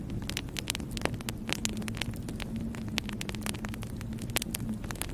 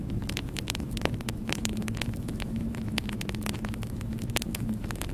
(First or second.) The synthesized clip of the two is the second